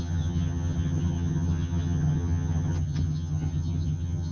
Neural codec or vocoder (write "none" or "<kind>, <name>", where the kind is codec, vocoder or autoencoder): vocoder, HiFi-GAN